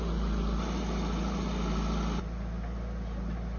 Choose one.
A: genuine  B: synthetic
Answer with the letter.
A